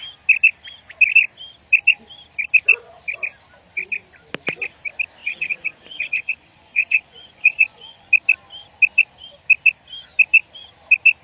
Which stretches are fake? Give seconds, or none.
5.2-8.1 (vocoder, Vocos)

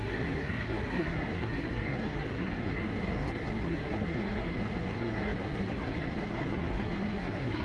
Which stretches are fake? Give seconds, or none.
0.0-7.6 (codec, SNAC)

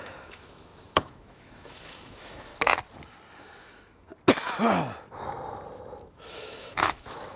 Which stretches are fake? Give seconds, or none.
0.0-2.5 (autoencoder, DAC-VAE); 3.6-4.1; 6.0-7.4

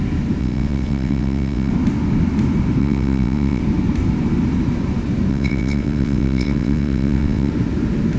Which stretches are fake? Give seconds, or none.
0.4-1.7 (vocoder, WaveNeXt); 2.8-3.6; 5.3-7.5

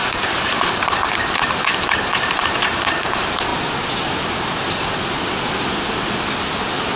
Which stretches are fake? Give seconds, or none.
0.0-3.5 (vocoder, BigVGAN v2)

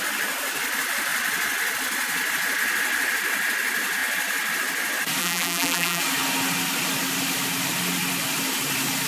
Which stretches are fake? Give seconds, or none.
5.2-6.0 (vocoder, BigVGAN v2)